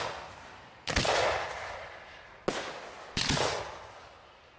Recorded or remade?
recorded